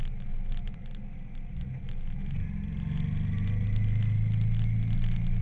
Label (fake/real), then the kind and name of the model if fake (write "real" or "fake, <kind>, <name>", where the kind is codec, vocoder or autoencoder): real